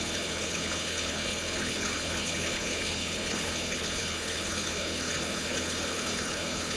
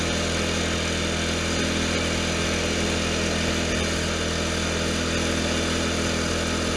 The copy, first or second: first